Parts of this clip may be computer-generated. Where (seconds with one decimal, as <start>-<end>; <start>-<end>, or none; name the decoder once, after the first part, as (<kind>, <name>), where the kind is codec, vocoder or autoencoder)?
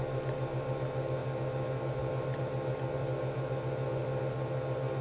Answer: none